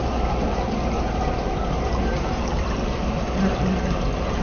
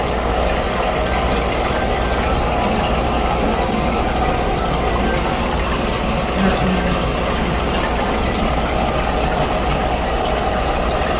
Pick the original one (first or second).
second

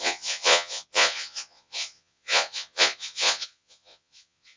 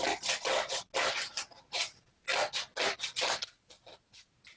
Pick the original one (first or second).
second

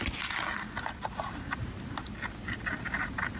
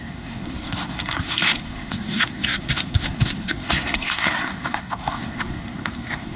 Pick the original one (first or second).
first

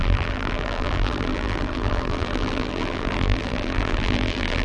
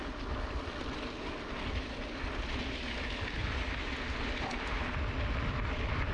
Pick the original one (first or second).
second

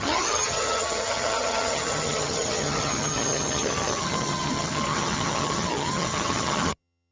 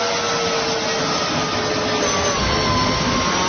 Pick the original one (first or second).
second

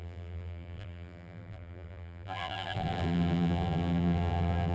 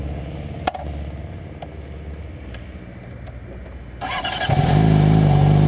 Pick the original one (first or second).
second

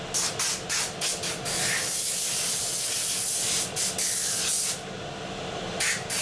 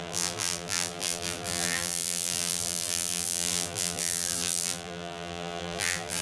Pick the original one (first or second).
first